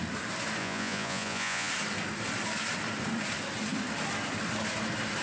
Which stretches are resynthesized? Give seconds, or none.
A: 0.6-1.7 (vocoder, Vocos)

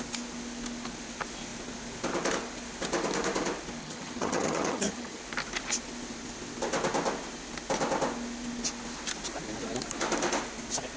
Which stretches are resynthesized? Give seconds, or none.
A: 3.8-5.2 (vocoder, HiFi-GAN)

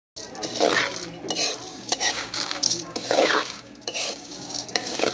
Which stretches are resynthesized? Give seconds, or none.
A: 1.7-5.1 (codec, DAC)

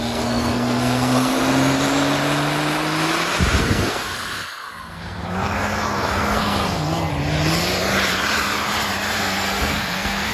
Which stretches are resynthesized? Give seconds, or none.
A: 0.0-1.4 (codec, SNAC); 3.6-7.1; 9.2-10.3

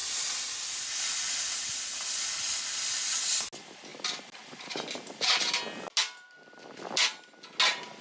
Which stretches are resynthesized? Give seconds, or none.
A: none

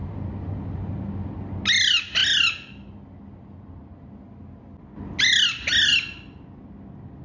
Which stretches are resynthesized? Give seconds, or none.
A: 0.0-1.3 (vocoder, BigVGAN v2)

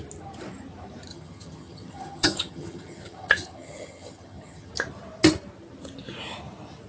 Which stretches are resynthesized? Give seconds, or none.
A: 1.1-4.7 (vocoder, HiFi-GAN)

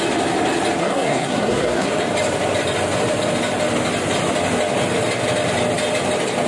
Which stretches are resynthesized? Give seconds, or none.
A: 0.8-1.9 (codec, SNAC)